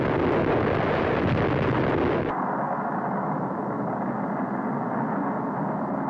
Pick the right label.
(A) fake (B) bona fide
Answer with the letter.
B